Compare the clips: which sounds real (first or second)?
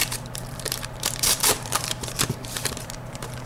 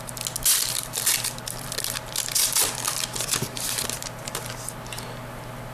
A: second